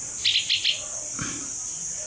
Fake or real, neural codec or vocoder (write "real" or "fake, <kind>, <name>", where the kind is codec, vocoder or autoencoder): real